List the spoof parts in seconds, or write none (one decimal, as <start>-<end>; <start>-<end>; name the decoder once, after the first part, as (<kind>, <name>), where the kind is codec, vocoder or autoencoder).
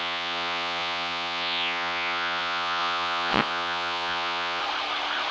0.0-4.6 (vocoder, Vocos)